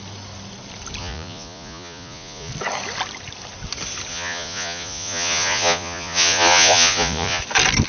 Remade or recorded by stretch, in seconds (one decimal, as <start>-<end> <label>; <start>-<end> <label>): 0.0-1.0 recorded; 1.0-2.5 remade; 2.5-4.1 recorded; 4.1-7.4 remade; 7.4-7.9 recorded